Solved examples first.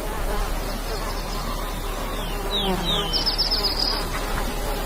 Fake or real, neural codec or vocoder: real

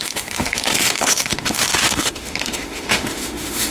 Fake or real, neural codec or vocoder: fake, autoencoder, DAC-VAE